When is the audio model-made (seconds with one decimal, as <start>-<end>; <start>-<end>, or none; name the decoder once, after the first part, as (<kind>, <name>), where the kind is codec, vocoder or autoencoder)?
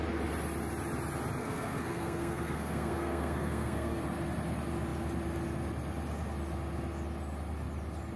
1.4-4.0 (codec, SNAC)